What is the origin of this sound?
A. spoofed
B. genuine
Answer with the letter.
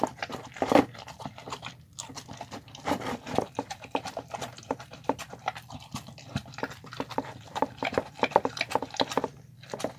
A